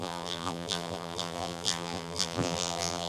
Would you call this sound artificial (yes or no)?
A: yes